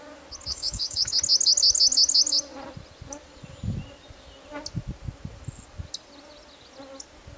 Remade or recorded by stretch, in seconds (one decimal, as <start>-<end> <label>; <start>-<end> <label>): 0.0-0.5 recorded; 0.5-1.1 remade; 1.1-7.4 recorded